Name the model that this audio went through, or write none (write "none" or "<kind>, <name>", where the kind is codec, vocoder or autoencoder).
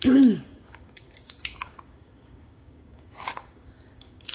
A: codec, DAC